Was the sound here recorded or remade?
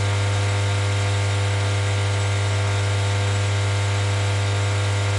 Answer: recorded